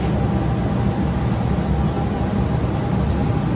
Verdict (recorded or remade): recorded